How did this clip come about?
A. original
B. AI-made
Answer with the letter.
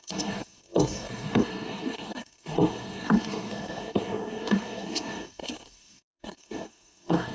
B